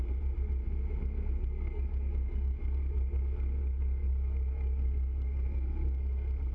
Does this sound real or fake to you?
fake